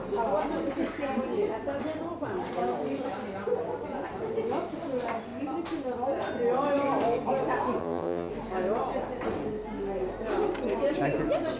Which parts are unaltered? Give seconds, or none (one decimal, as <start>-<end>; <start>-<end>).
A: 0.0-7.8; 8.3-11.6

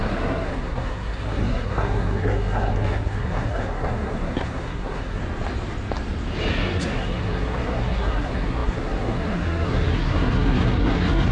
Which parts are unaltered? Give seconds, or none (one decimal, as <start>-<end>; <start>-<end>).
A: 5.2-6.5

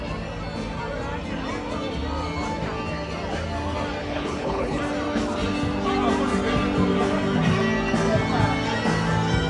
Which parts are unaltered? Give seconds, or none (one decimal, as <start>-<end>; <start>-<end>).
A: 0.0-4.0; 4.8-9.5

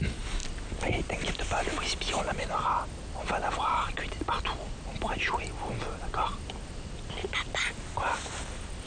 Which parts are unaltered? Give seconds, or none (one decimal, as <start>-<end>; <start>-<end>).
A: 0.0-8.9

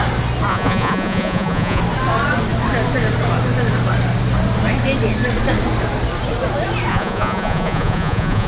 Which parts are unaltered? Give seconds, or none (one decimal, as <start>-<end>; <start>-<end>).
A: 0.0-0.5; 1.8-6.9

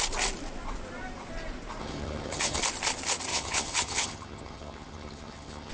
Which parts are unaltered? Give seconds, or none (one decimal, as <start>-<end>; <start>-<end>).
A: 0.0-1.8; 2.6-3.3

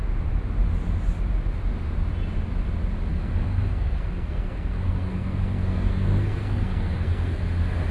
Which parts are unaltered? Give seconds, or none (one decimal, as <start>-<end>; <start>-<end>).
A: 0.0-3.1; 7.4-7.9

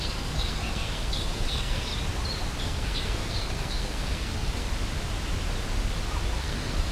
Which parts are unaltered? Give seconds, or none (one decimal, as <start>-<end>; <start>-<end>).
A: 1.9-2.6; 4.7-6.4